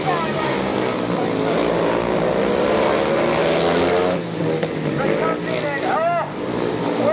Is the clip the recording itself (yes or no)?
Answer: yes